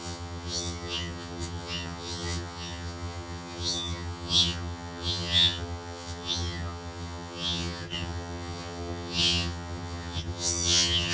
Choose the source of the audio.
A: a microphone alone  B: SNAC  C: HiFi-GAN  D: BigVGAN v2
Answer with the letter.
C